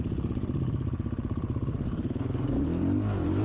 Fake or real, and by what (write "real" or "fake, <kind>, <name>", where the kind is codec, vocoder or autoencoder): real